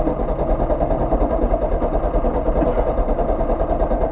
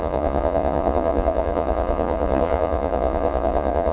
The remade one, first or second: second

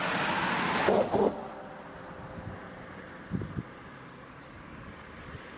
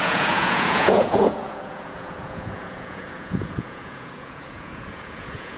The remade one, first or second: second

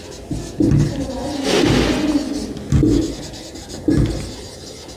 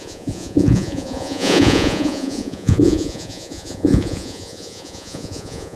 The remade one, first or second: second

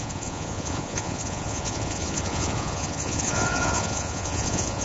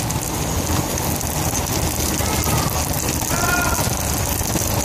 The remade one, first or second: first